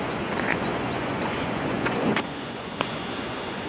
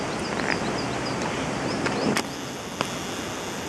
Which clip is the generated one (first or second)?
first